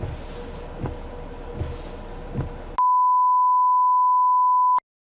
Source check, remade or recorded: recorded